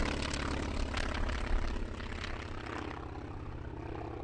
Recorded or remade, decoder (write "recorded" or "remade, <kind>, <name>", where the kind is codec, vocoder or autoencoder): recorded